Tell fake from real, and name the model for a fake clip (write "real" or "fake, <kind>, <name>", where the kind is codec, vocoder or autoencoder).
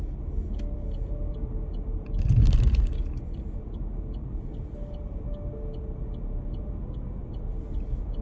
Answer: real